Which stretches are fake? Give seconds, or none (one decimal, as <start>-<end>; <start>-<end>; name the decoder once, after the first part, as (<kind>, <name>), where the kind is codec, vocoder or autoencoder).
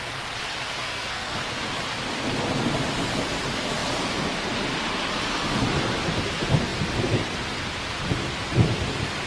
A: 0.8-1.4 (codec, SNAC)